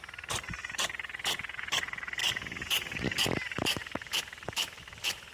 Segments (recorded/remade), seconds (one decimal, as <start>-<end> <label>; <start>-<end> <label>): 0.0-0.6 recorded; 0.6-1.6 remade; 1.6-2.2 recorded; 2.2-4.2 remade; 4.2-5.3 recorded